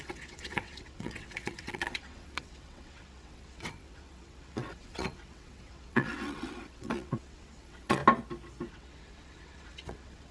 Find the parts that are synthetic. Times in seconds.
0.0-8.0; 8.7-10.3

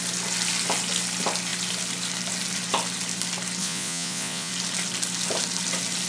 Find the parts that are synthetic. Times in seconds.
3.6-4.5

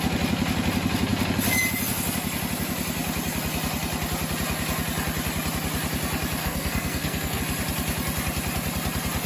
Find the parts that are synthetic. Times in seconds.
6.4-7.4

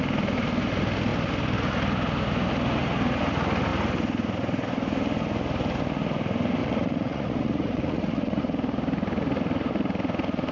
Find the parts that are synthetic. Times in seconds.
6.6-8.4

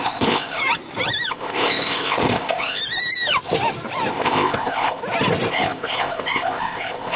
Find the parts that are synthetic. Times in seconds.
0.0-0.6; 1.3-2.8; 4.1-5.0; 5.5-7.2